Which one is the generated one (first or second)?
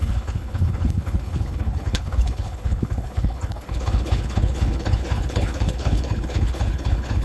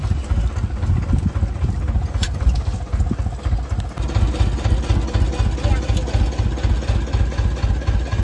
first